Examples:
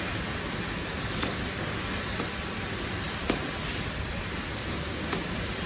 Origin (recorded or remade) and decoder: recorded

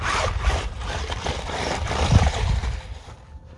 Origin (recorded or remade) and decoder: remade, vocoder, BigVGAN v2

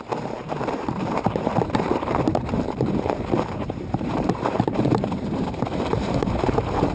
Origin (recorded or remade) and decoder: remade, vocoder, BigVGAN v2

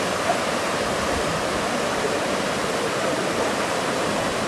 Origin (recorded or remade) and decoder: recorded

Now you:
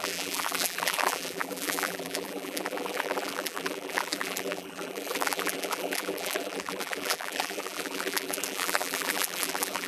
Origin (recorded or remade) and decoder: remade, vocoder, BigVGAN v2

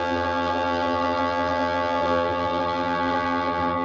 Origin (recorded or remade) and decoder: remade, vocoder, BigVGAN v2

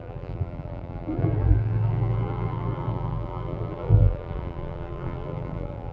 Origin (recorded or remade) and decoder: remade, vocoder, BigVGAN v2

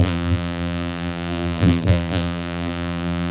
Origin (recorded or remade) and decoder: remade, vocoder, BigVGAN v2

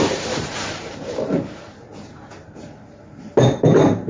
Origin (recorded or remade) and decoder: remade, vocoder, BigVGAN v2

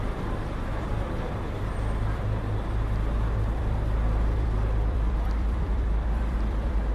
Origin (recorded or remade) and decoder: remade, vocoder, BigVGAN v2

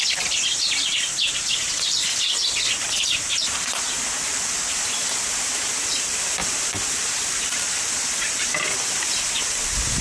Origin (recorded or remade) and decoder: remade, vocoder, BigVGAN v2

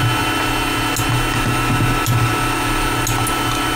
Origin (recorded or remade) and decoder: recorded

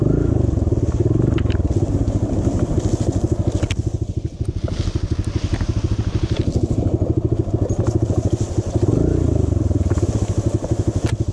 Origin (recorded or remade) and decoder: recorded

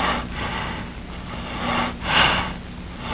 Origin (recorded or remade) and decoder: recorded